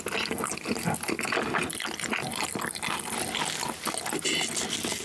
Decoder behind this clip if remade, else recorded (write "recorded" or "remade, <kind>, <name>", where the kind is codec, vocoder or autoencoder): recorded